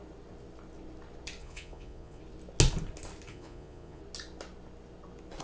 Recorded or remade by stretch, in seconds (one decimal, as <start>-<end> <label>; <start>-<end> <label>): 0.0-1.4 recorded; 1.4-2.2 remade; 2.2-3.3 recorded; 3.3-4.0 remade; 4.0-5.4 recorded